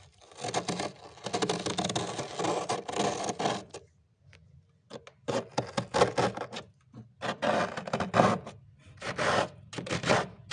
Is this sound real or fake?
real